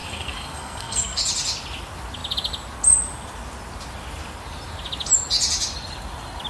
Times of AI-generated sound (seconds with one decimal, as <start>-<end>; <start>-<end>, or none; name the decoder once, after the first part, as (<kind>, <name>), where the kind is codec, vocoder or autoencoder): 0.0-1.2 (codec, SNAC)